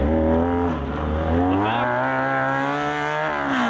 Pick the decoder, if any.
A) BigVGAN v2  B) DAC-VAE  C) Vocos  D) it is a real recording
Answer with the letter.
D